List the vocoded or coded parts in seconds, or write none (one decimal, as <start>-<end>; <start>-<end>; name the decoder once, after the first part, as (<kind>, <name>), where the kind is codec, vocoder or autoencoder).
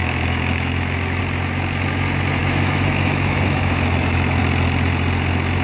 0.0-1.2 (autoencoder, DAC-VAE); 2.4-4.4